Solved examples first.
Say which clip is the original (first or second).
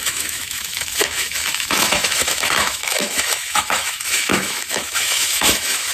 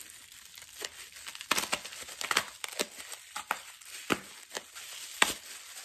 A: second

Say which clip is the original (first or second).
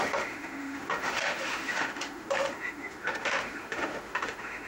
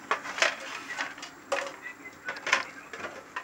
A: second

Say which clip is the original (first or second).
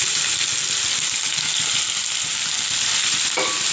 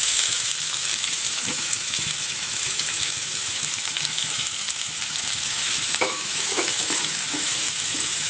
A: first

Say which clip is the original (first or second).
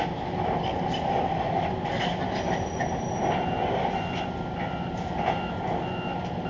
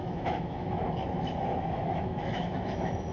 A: first